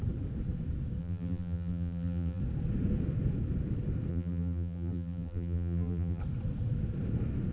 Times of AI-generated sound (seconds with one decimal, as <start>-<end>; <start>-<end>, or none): 1.0-2.4; 4.1-6.2